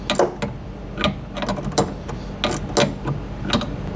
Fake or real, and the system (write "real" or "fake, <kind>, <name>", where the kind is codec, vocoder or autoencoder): real